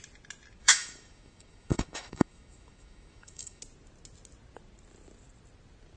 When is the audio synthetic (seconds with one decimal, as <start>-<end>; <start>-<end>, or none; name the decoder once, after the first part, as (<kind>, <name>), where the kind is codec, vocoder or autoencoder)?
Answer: 0.6-3.6 (autoencoder, DAC-VAE)